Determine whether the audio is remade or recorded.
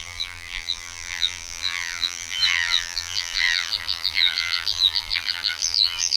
remade